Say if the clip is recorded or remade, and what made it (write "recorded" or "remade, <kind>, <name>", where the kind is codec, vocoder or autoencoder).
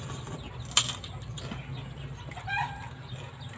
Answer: recorded